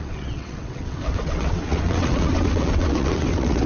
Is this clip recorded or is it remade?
remade